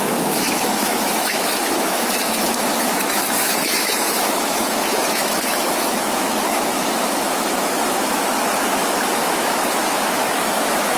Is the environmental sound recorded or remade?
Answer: remade